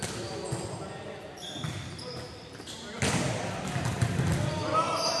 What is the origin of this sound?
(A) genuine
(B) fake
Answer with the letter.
A